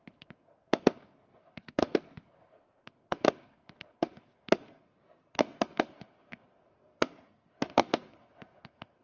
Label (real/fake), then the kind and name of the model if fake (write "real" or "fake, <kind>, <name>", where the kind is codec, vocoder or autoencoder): fake, codec, SNAC